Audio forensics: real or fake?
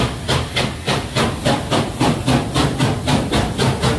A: real